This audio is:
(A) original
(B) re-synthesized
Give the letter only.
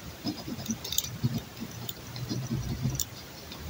B